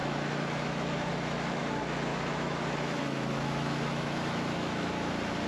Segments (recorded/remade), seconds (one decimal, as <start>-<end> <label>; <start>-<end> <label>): 0.0-1.6 remade; 1.6-2.1 recorded; 2.1-5.1 remade; 5.1-5.5 recorded